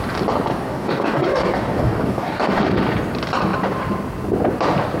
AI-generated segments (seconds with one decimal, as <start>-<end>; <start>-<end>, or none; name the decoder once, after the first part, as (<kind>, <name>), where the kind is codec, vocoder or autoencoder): 0.5-2.6 (codec, DAC)